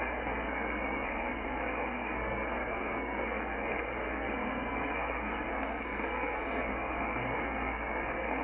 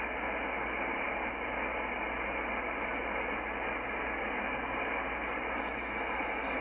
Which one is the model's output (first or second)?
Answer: first